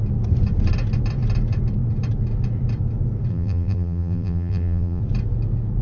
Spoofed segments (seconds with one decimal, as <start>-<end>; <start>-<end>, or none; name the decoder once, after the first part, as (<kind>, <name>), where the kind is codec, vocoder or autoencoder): 3.3-5.0 (vocoder, BigVGAN v2)